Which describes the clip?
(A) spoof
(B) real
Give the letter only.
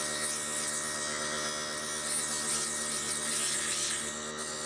B